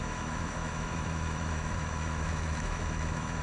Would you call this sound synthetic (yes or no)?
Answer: yes